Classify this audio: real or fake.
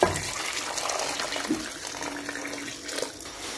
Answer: real